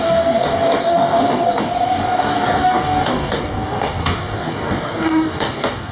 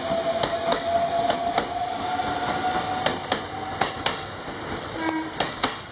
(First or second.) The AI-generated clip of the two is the first